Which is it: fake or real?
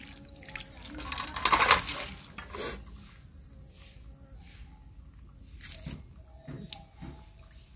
real